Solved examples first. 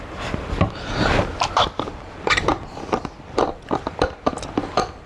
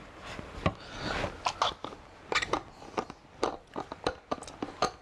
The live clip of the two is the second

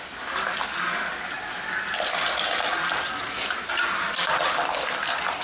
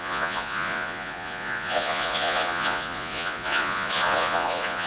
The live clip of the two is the first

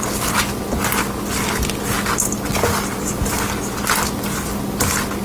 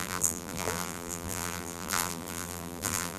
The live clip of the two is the first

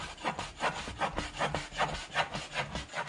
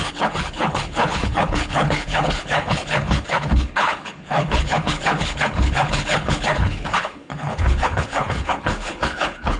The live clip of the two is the first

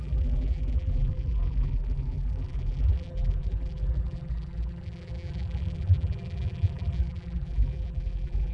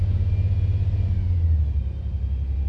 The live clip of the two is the second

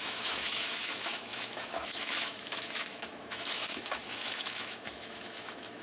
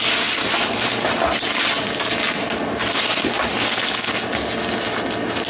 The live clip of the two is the second